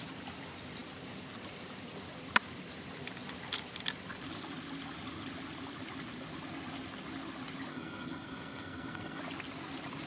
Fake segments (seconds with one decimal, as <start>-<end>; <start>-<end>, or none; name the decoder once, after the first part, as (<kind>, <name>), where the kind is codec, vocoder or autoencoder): 7.7-9.2 (codec, SNAC)